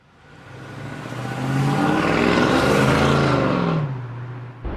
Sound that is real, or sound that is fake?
real